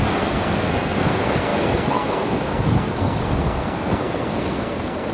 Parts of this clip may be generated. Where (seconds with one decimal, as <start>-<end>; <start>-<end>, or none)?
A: 0.0-5.1